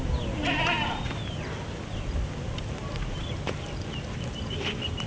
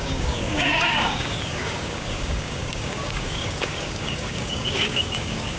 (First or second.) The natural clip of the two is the first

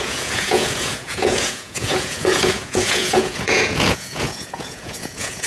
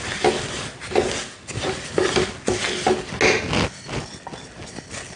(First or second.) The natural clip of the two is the second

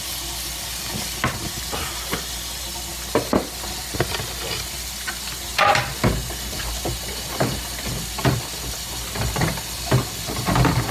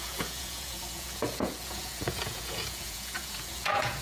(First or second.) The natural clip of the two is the first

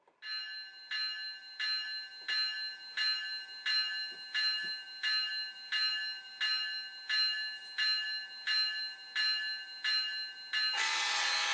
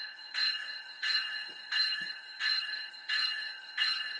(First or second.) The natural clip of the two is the first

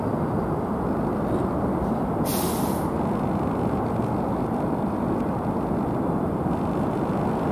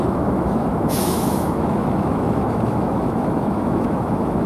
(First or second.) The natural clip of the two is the first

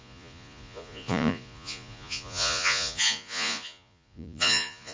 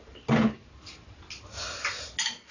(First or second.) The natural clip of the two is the second